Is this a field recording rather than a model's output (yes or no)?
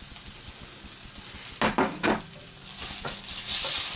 yes